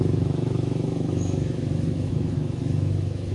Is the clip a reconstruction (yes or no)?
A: yes